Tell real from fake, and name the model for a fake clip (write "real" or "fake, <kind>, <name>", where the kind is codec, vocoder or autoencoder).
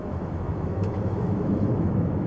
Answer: fake, autoencoder, DAC-VAE